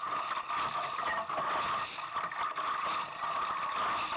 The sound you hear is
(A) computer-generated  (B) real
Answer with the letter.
B